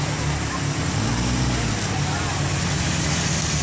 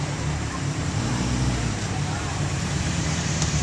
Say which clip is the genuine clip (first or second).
first